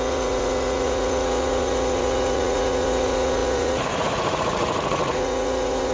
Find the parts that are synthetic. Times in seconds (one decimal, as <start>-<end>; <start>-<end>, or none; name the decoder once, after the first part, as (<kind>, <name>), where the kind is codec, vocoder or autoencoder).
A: 0.0-5.9 (vocoder, Vocos)